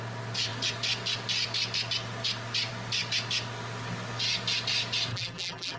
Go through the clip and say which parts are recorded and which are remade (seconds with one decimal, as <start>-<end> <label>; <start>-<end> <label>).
0.0-5.1 recorded; 5.1-5.8 remade